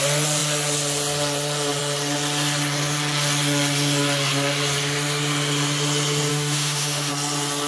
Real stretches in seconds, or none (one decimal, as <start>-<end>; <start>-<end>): 0.0-6.3; 7.1-7.7